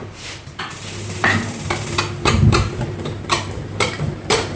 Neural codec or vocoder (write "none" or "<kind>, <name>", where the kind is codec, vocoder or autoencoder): vocoder, BigVGAN v2